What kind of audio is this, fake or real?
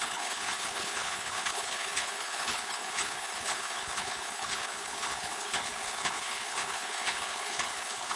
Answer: fake